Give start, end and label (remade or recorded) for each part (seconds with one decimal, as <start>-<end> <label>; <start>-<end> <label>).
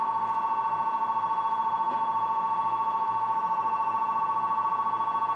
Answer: 0.0-5.4 recorded